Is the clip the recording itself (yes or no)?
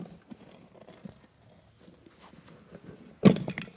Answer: yes